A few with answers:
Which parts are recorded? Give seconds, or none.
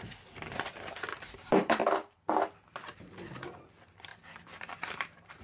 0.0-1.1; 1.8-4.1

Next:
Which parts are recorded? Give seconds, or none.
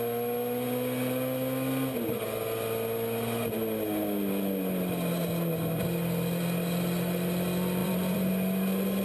0.0-7.8; 8.3-9.0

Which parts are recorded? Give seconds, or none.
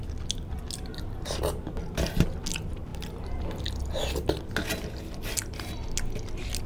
0.0-2.9; 3.6-6.7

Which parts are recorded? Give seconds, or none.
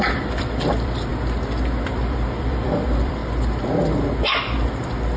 1.1-1.9; 3.2-5.2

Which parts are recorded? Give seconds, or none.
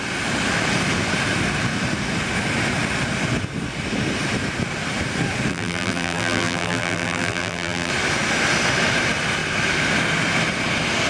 0.0-5.5; 7.9-11.1